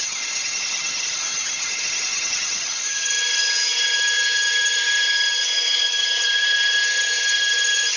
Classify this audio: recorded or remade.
remade